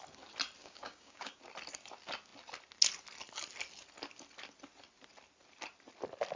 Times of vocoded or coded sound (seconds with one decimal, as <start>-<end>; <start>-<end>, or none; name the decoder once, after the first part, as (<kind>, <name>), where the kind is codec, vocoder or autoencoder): 0.6-1.4 (codec, DAC)